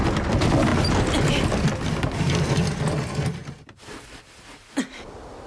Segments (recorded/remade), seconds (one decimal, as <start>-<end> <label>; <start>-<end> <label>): 0.0-5.5 recorded